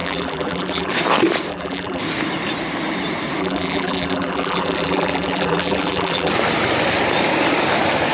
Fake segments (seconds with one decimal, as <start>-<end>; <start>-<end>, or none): 0.0-0.9; 1.5-2.0; 3.4-6.3